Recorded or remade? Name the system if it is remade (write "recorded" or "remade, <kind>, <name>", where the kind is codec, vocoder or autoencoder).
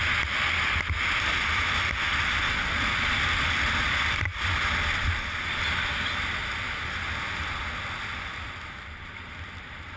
recorded